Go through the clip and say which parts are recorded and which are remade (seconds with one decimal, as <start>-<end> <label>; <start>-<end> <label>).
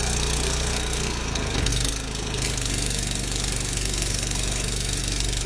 0.0-5.5 remade